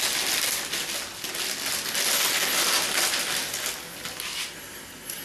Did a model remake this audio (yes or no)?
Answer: no